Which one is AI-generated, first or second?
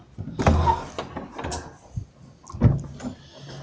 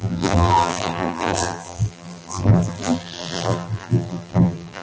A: second